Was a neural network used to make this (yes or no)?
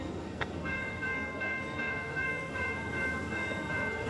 yes